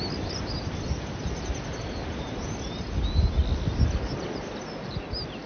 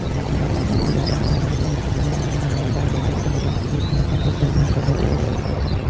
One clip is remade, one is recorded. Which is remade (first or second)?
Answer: second